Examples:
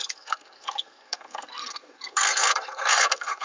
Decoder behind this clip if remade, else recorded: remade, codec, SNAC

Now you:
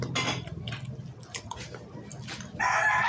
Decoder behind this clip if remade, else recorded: recorded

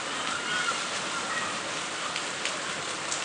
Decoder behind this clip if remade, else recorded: recorded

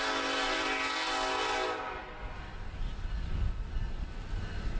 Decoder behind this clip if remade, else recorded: recorded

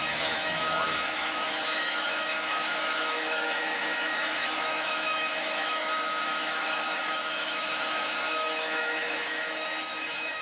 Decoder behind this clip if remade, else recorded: remade, autoencoder, DAC-VAE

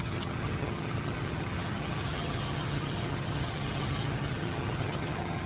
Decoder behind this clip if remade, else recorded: remade, vocoder, HiFi-GAN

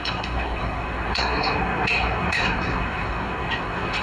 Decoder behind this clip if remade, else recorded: remade, codec, SNAC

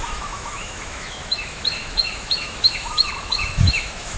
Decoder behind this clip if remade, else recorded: remade, autoencoder, DAC-VAE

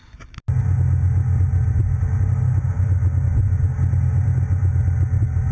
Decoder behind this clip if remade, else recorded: recorded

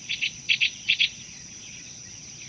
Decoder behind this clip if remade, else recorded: remade, vocoder, Vocos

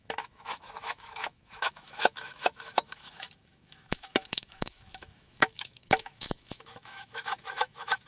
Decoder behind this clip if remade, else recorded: remade, autoencoder, DAC-VAE